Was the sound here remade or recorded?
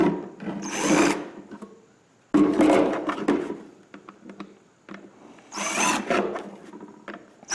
recorded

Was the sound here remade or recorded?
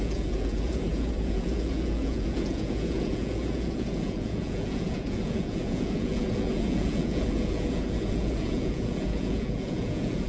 remade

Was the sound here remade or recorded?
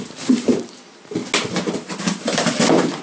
recorded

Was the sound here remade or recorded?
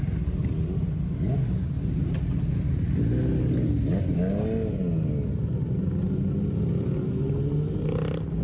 recorded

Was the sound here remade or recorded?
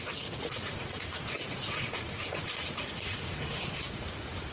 remade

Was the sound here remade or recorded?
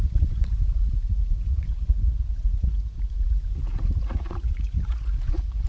remade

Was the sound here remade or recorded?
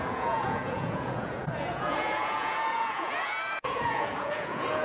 remade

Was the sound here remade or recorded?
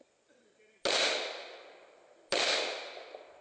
recorded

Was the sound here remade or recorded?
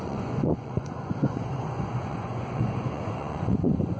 remade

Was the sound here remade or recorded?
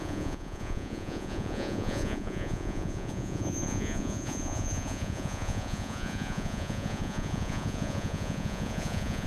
remade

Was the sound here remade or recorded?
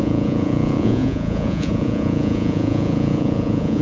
remade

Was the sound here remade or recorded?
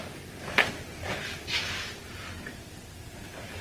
recorded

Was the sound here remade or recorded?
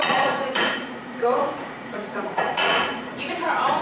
remade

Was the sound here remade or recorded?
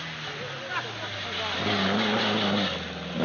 recorded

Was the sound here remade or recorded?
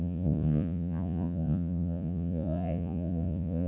remade